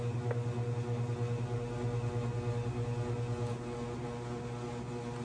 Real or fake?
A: real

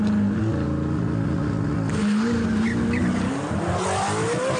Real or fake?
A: real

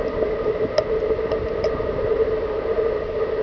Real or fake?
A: real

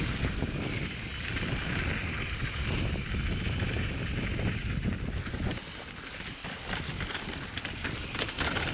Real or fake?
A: real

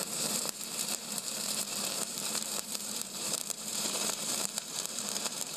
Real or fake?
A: fake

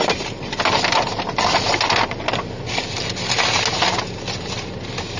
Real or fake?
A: real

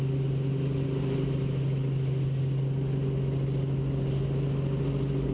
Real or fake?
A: real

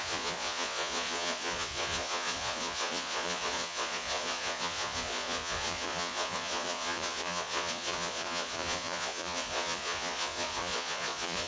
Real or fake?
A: fake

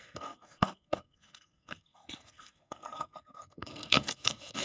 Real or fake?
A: fake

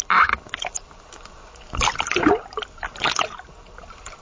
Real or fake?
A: real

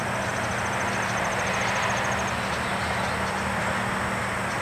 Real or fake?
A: real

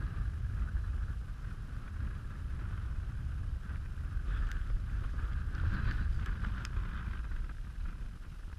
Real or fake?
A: fake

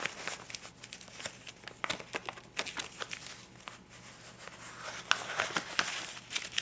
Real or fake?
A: real